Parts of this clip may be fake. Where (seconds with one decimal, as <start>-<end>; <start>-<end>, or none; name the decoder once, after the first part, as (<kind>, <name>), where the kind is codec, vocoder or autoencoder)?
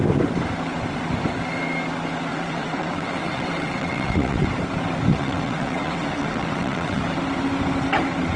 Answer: 2.3-4.5 (vocoder, WaveNeXt); 5.1-7.0